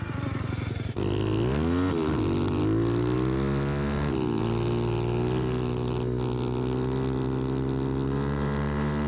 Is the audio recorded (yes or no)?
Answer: yes